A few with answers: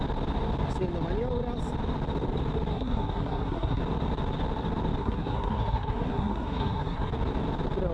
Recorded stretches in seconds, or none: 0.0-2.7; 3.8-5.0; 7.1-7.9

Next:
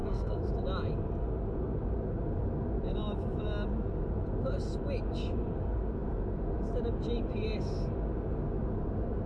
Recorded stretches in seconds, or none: 0.5-9.3